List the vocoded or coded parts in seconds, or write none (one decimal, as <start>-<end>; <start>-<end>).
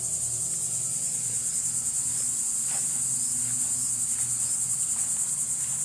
none